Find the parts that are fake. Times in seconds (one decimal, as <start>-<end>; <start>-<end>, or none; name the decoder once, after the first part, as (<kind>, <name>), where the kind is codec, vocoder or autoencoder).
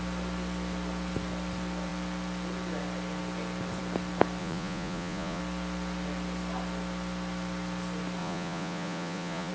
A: 4.4-5.4 (vocoder, Vocos); 8.2-9.5